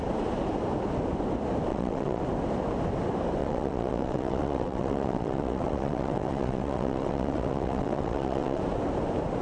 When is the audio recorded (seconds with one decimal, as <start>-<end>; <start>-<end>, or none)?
0.0-1.7; 2.2-3.4; 8.6-9.4